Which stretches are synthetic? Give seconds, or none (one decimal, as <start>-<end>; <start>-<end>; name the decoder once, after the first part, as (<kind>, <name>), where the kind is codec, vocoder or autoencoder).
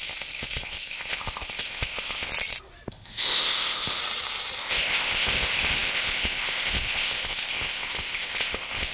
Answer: 0.0-2.3 (codec, ZipCodec); 2.9-4.0; 4.6-8.9